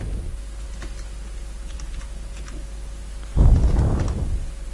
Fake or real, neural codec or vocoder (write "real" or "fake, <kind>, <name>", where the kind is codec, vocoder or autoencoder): real